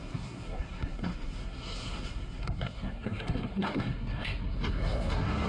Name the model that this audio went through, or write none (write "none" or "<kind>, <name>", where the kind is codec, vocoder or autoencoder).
codec, SNAC